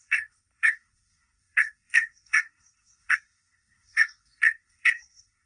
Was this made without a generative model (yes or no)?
no